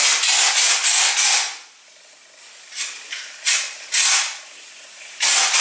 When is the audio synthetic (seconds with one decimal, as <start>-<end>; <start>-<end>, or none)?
none